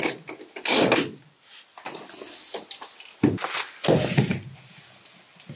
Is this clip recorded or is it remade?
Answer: recorded